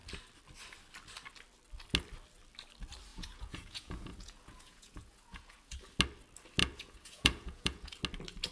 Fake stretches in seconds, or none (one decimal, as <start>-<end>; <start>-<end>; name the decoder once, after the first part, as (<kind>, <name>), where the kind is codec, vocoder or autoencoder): 3.1-5.8 (vocoder, Vocos); 6.6-8.0

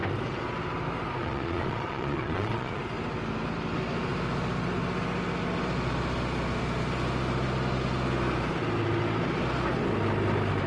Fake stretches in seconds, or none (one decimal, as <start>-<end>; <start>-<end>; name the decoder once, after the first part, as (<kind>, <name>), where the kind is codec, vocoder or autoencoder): 1.2-2.8 (vocoder, Vocos)

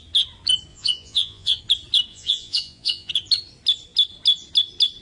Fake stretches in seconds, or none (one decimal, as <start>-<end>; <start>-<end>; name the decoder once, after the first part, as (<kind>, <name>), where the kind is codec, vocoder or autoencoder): 0.7-1.6 (vocoder, Vocos); 2.1-3.1

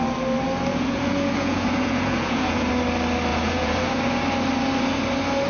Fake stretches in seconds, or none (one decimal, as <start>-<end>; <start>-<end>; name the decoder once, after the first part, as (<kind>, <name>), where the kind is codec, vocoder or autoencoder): 0.7-2.7 (vocoder, Vocos); 3.3-4.0

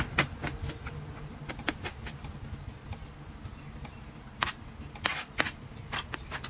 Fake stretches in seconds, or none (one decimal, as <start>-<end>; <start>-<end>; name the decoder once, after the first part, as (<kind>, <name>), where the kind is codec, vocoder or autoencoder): none

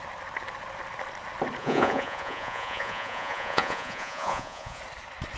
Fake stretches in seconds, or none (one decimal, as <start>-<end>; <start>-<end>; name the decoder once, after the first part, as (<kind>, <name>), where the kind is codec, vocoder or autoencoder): 1.6-4.8 (vocoder, Vocos)